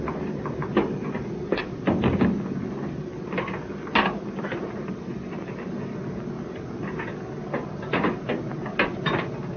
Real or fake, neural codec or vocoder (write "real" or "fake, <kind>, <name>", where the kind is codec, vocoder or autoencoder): real